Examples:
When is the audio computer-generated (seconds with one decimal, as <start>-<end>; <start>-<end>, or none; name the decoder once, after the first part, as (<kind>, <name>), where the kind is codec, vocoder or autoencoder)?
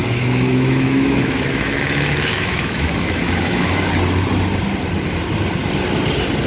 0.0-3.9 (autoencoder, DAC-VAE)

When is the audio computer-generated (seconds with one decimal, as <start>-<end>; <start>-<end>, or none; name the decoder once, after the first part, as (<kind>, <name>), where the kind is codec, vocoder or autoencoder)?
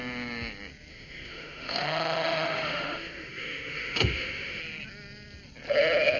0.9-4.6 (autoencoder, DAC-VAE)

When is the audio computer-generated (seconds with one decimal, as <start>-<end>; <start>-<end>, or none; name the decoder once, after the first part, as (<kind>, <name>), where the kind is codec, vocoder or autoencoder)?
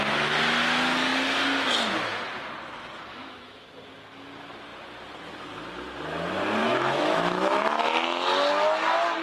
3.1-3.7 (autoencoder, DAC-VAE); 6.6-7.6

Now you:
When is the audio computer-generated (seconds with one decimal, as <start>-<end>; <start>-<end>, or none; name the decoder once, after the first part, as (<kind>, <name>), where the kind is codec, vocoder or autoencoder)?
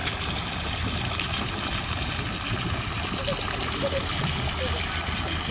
none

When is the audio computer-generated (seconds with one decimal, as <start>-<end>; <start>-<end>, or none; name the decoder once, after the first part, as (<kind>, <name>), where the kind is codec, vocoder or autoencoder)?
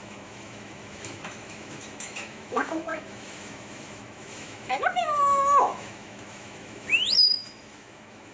0.0-8.3 (autoencoder, DAC-VAE)